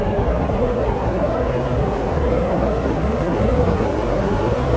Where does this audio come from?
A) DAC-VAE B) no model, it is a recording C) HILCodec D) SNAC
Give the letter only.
D